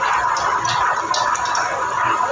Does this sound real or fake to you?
real